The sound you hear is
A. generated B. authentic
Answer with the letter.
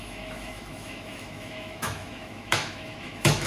A